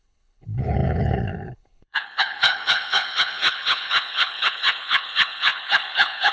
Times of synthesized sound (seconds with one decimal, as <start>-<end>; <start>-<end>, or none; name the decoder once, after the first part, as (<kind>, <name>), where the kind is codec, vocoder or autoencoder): 0.0-6.3 (codec, HILCodec)